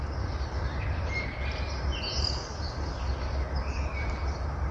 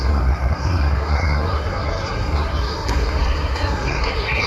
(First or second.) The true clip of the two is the first